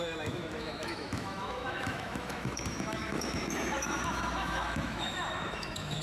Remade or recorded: remade